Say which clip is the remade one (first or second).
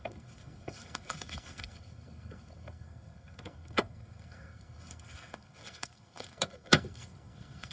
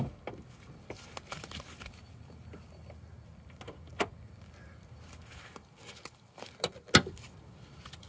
first